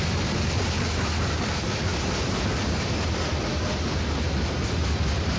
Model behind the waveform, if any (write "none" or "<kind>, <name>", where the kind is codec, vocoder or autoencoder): none